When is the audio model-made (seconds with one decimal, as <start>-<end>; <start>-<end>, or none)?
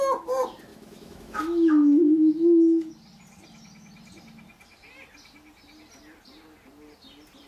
0.7-2.9